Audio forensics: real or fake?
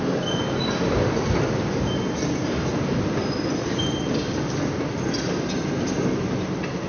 real